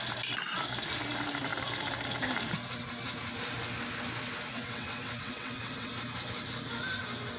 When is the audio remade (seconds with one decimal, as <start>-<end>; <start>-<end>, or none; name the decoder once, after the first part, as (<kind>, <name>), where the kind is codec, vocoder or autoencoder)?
4.5-5.9 (vocoder, WaveNeXt)